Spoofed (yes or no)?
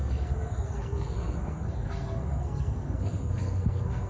yes